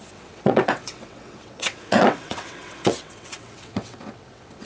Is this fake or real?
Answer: fake